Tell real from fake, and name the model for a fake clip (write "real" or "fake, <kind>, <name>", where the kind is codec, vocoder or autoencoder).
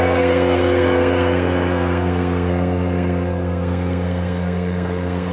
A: fake, codec, SNAC